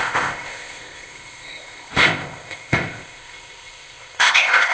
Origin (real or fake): fake